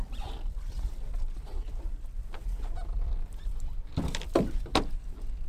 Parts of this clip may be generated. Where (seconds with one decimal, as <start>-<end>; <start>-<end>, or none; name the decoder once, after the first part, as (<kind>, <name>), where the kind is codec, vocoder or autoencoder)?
none